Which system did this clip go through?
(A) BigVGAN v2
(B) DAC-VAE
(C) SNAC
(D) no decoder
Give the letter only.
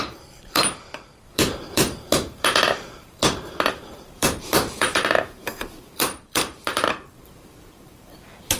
A